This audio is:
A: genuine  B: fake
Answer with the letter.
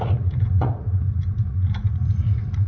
B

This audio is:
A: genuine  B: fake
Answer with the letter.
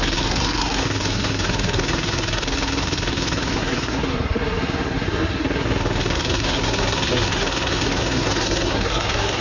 B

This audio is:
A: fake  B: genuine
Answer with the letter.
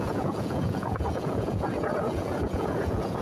A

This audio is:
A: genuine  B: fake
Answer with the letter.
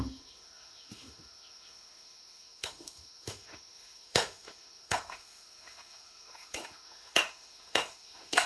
B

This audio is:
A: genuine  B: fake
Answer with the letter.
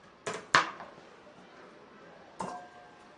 A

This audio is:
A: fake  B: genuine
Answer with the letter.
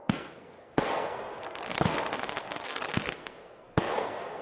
A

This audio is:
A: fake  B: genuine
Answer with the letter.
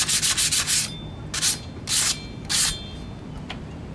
B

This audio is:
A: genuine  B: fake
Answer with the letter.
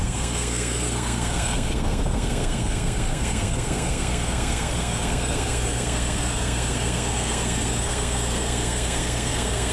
B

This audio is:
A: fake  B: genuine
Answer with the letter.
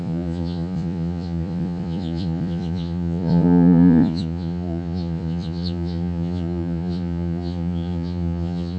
A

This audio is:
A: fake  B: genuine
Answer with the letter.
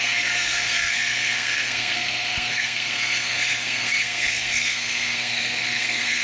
A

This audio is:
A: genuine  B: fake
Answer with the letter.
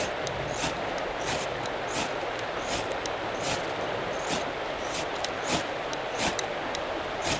A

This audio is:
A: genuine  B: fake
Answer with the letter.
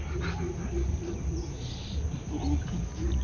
A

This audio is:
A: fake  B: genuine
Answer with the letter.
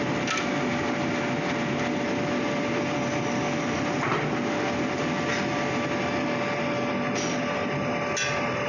B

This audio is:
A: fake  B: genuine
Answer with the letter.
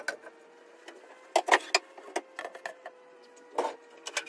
B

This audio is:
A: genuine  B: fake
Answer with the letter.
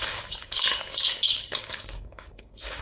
B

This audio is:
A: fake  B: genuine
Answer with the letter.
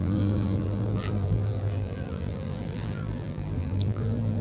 A